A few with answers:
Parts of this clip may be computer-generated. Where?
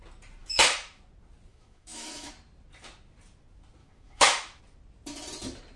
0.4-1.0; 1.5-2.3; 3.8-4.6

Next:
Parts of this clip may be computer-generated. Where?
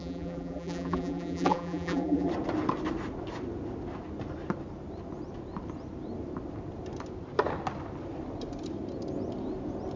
0.0-2.3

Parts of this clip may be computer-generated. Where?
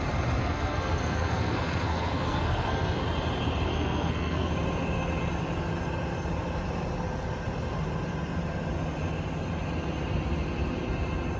0.4-3.0; 3.7-4.5